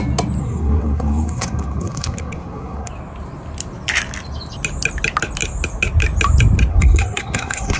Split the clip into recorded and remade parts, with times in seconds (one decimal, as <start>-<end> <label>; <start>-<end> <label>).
0.0-0.4 recorded; 0.4-2.9 remade; 2.9-6.7 recorded; 6.7-7.8 remade